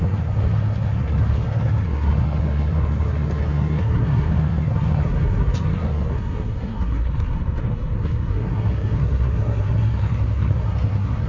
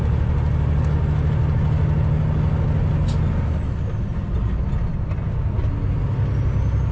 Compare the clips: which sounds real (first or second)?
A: second